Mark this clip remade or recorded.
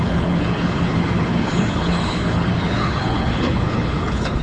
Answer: remade